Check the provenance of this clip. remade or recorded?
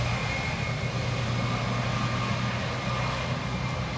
recorded